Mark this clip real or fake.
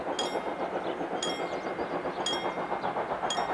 real